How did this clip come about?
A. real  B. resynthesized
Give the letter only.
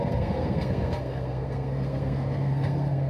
B